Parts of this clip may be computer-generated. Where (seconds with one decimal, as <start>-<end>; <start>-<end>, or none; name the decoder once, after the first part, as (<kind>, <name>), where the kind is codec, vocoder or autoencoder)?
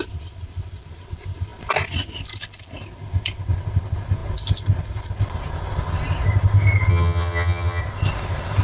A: 6.9-7.8 (vocoder, HiFi-GAN)